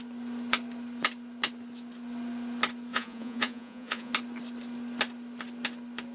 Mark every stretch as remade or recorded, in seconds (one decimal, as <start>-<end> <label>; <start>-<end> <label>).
0.0-2.9 recorded; 2.9-4.1 remade; 4.1-6.1 recorded